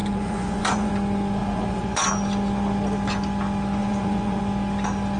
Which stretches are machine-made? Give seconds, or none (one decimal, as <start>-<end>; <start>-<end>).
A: 0.0-0.9; 1.4-2.1; 3.8-4.4